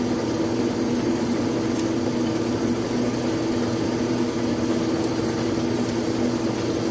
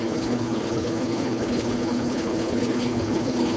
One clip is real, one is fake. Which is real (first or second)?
first